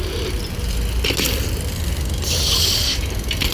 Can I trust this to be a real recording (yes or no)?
yes